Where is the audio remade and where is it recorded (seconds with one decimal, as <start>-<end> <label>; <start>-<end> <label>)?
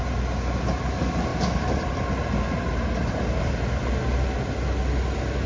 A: 0.0-1.3 recorded; 1.3-1.9 remade; 1.9-5.5 recorded